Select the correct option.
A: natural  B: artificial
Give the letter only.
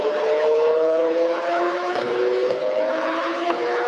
B